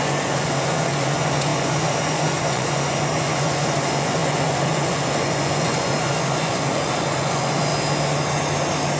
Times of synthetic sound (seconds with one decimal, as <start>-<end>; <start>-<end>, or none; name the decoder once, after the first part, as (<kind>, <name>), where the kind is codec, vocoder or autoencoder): 0.0-7.7 (vocoder, Vocos)

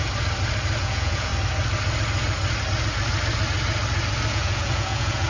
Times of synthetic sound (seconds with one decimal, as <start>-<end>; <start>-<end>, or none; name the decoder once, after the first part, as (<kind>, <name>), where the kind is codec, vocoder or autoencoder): 0.8-1.3 (vocoder, Vocos); 4.3-5.3

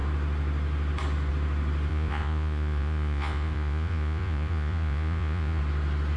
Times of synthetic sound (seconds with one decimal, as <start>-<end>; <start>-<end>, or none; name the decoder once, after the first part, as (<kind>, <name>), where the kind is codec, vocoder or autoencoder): 1.9-5.6 (vocoder, Vocos)

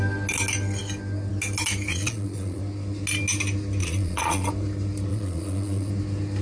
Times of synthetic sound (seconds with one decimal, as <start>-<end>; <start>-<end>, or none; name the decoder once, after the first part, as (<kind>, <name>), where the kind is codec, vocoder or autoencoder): 1.9-2.6 (vocoder, Vocos); 3.8-4.5; 5.1-5.9

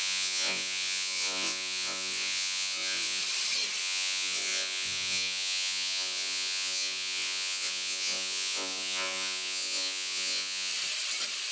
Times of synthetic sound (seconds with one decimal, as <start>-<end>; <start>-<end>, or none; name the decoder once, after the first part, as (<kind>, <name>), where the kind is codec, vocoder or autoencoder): 0.0-3.2 (vocoder, Vocos); 3.8-10.7

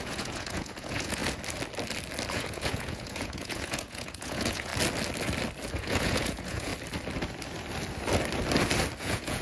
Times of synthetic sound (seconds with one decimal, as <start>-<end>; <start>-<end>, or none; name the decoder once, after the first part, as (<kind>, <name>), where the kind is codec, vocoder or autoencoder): 0.0-1.2 (vocoder, Vocos); 2.3-4.7; 5.7-6.7; 9.0-9.4